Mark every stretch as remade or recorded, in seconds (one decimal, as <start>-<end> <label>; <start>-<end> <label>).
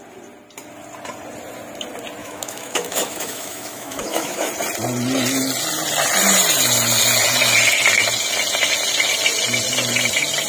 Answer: 0.0-2.2 recorded; 2.2-4.5 remade; 4.5-10.5 recorded